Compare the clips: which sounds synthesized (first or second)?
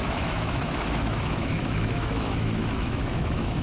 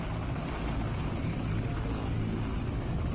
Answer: first